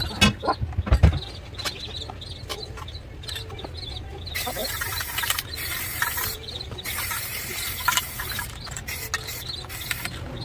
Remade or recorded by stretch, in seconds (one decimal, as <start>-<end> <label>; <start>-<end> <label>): 0.0-2.5 recorded; 2.5-3.3 remade; 3.3-4.6 recorded; 4.6-8.8 remade; 8.8-10.4 recorded